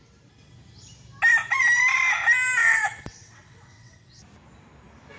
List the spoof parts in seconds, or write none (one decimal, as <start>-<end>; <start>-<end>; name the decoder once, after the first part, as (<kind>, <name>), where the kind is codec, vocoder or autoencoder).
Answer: 2.6-4.2 (vocoder, WaveNeXt)